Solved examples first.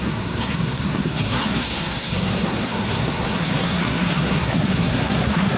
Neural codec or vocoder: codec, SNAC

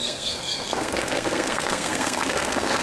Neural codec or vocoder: codec, SNAC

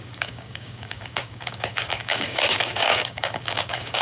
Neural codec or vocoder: codec, DAC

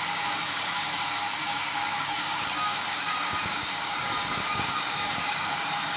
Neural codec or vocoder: codec, DAC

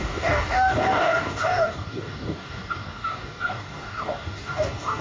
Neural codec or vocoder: codec, DAC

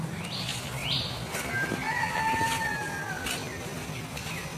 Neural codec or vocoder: none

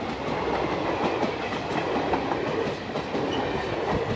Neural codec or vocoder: none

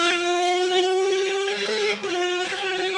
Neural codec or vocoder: codec, SNAC